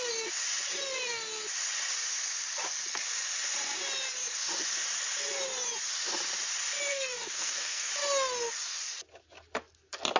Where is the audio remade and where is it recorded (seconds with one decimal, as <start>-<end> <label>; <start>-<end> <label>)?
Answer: 0.0-6.9 recorded; 6.9-7.9 remade; 7.9-10.2 recorded

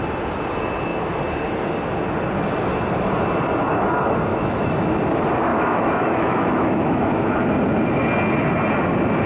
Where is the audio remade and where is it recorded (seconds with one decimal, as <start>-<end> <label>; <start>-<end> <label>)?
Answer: 0.0-4.3 recorded; 4.3-4.9 remade; 4.9-5.5 recorded; 5.5-7.3 remade; 7.3-9.3 recorded

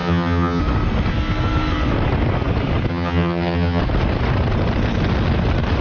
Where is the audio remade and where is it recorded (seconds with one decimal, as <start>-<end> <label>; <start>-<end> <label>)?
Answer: 0.0-0.6 remade; 0.6-2.9 recorded; 2.9-3.8 remade; 3.8-5.8 recorded

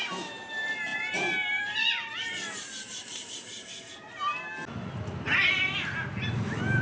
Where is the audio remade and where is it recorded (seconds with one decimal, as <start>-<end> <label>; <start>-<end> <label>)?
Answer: 0.0-6.8 recorded

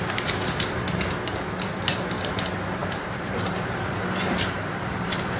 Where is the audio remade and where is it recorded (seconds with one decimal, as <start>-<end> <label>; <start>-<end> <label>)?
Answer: 0.0-2.8 recorded; 2.8-5.4 remade

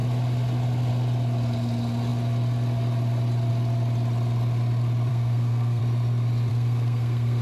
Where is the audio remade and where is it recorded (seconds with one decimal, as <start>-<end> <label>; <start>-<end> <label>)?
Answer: 0.0-5.1 recorded; 5.1-5.8 remade; 5.8-6.5 recorded; 6.5-7.4 remade